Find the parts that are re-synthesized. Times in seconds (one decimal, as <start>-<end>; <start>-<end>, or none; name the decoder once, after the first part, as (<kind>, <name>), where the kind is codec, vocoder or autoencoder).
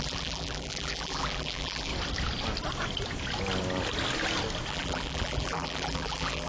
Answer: 0.0-1.9 (vocoder, BigVGAN v2); 4.7-6.5